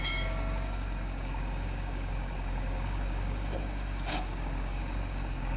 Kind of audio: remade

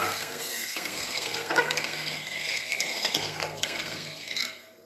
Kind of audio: remade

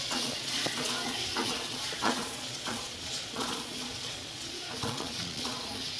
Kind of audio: remade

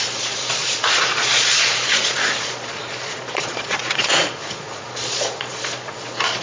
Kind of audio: remade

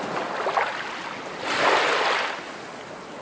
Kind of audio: recorded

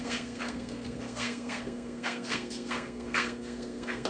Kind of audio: remade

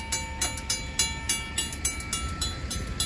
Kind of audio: recorded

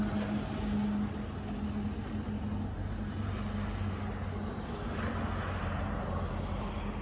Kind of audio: recorded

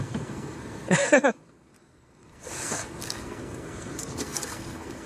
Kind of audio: remade